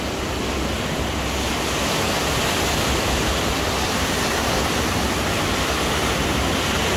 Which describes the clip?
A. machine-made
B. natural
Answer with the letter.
B